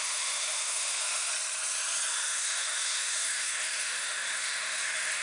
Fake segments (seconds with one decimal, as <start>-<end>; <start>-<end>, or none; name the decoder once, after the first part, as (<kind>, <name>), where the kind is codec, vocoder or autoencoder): 0.0-1.3 (autoencoder, DAC-VAE); 2.1-5.2